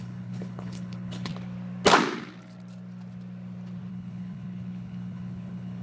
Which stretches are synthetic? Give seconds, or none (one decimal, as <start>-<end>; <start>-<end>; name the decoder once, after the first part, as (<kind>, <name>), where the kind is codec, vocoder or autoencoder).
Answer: 0.0-1.3 (codec, HILCodec); 3.9-5.8